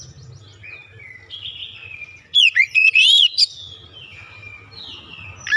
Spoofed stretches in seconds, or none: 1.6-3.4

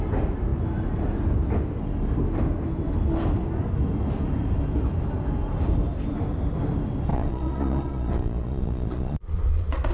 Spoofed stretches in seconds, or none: 7.1-9.9

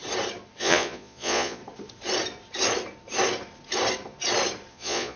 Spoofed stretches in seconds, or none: 0.6-1.6; 4.7-5.2